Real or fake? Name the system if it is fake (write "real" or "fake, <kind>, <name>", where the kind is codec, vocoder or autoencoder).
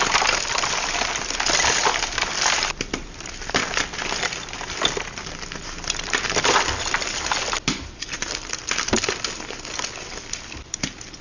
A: fake, vocoder, BigVGAN v2